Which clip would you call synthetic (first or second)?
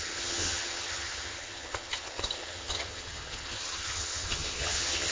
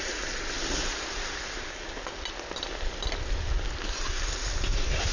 first